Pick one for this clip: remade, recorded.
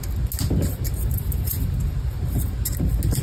recorded